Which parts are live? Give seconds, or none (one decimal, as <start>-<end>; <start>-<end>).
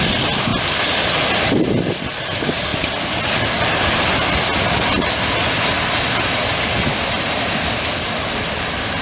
0.0-9.0